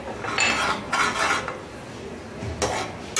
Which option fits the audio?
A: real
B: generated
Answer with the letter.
A